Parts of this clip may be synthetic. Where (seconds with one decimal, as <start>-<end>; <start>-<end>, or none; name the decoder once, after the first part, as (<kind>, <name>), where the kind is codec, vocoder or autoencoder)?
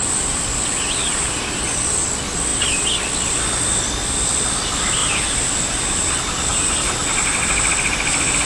1.0-1.5 (vocoder, BigVGAN v2); 5.0-6.1; 6.5-7.3